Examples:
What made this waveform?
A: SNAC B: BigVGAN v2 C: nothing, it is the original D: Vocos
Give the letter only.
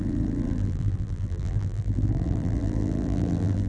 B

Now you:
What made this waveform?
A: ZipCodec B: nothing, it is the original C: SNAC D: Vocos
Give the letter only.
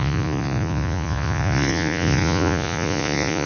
D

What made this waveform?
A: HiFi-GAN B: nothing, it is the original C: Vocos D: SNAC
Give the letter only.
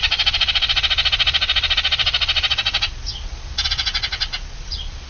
C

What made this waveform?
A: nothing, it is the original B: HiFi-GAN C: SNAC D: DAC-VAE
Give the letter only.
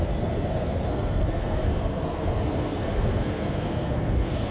C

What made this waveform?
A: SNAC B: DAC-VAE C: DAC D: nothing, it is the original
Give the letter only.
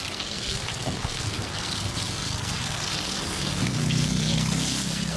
A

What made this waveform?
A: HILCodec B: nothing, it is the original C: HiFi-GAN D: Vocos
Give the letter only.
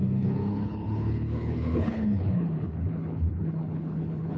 A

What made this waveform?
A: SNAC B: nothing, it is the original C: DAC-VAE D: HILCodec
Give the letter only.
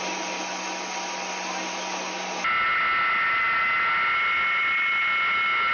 B